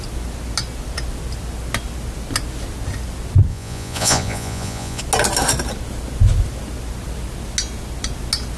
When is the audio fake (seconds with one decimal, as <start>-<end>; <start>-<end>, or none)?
3.5-5.0